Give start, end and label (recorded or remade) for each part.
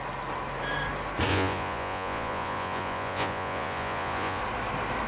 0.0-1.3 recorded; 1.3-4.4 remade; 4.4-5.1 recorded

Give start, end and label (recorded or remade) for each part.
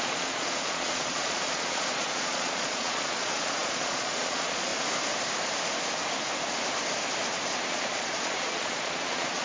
0.0-4.7 remade; 4.7-7.7 recorded; 7.7-9.4 remade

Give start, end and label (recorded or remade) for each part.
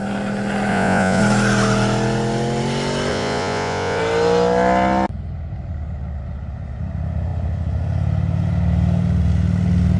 0.0-0.7 recorded; 0.7-1.2 remade; 1.2-3.1 recorded; 3.1-4.0 remade; 4.0-10.0 recorded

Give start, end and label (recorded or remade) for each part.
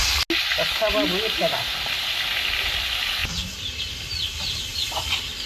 0.0-5.5 recorded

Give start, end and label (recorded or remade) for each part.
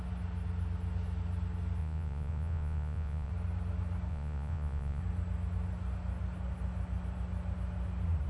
0.0-1.8 recorded; 1.8-3.3 remade; 3.3-4.1 recorded; 4.1-5.0 remade; 5.0-8.3 recorded